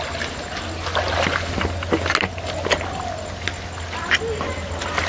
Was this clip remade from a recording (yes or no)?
no